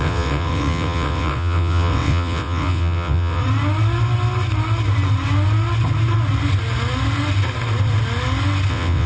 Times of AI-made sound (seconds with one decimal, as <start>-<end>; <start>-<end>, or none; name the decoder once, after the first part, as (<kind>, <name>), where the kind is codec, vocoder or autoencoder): 0.0-3.4 (vocoder, WaveNeXt); 8.7-9.1